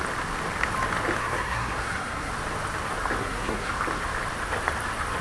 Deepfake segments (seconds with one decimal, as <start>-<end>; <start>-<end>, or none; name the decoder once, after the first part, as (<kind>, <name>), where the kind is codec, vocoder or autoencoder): 1.2-2.3 (codec, SNAC); 3.2-3.7